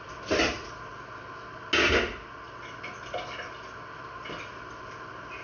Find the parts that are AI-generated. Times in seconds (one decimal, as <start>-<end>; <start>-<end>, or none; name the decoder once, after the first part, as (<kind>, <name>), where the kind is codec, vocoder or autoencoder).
none